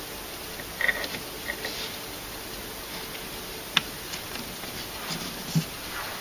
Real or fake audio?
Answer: real